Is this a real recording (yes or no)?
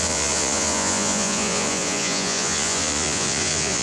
no